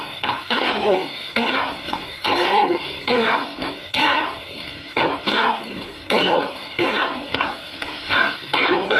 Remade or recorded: remade